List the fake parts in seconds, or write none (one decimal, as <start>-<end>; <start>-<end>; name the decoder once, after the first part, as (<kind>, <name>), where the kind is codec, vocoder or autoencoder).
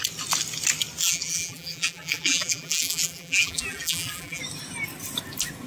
1.0-4.4 (vocoder, BigVGAN v2)